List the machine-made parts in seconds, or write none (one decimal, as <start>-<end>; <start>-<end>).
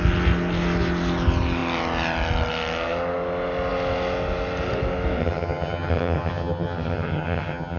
5.2-7.8